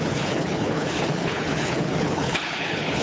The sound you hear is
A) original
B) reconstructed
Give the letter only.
B